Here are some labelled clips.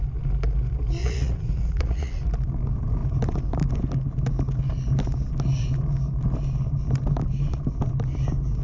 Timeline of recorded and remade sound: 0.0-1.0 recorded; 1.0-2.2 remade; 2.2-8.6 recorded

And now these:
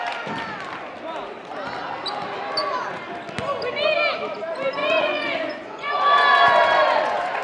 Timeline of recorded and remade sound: 0.0-4.8 recorded; 4.8-7.4 remade

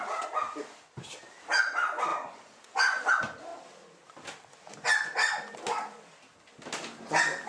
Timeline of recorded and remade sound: 0.0-2.1 recorded; 2.1-3.1 remade; 3.1-7.5 recorded

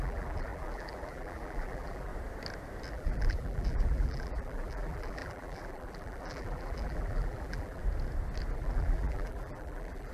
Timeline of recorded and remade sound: 0.0-2.1 remade; 2.1-2.9 recorded; 2.9-7.8 remade; 7.8-8.5 recorded; 8.5-10.1 remade

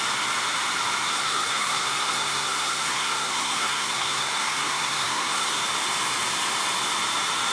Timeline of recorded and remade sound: 0.0-1.1 recorded; 1.1-5.6 remade; 5.6-7.5 recorded

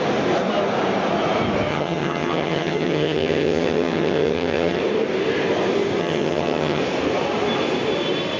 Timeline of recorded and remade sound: 0.0-1.7 recorded; 1.7-4.8 remade; 4.8-6.0 recorded; 6.0-6.8 remade; 6.8-8.4 recorded